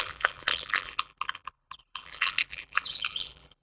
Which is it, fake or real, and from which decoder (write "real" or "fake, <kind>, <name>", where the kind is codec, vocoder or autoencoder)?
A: fake, vocoder, BigVGAN v2